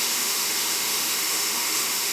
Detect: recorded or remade remade